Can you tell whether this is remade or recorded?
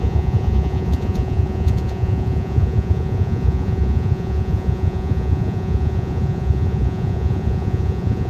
remade